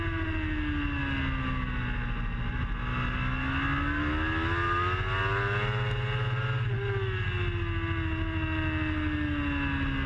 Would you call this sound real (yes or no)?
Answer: yes